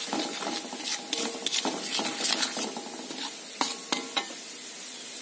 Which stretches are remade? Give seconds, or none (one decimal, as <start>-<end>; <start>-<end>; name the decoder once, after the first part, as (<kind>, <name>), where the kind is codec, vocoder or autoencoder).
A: none

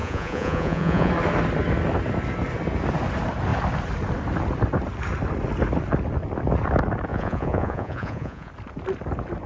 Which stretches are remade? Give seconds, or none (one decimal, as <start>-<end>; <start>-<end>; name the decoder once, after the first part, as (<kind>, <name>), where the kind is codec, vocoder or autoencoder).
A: 0.0-1.1 (vocoder, Vocos); 7.1-8.5

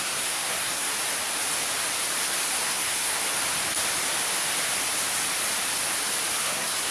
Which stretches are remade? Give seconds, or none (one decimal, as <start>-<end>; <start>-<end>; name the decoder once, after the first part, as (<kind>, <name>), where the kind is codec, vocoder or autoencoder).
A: 0.0-0.9 (codec, SNAC); 2.6-3.2; 6.4-6.9

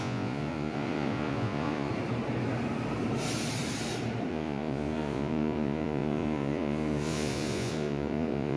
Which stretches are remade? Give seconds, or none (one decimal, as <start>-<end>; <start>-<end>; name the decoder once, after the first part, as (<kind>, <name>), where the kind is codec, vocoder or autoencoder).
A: 0.0-1.9 (vocoder, Vocos); 4.3-8.6

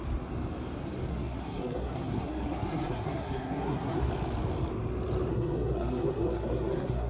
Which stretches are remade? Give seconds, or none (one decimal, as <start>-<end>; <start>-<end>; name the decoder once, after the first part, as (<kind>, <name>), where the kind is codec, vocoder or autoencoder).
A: 1.1-4.1 (codec, SNAC); 5.3-7.1

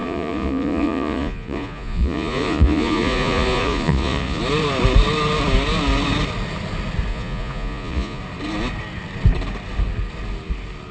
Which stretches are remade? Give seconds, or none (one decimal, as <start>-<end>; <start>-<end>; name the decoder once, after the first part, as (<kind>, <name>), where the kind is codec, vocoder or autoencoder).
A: 0.0-4.4 (vocoder, Vocos); 7.1-8.2

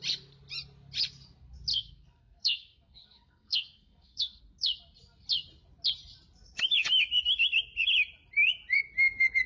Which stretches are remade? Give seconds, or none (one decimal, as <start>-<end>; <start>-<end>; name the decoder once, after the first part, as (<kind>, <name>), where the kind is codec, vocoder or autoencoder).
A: 1.7-4.4 (codec, SNAC)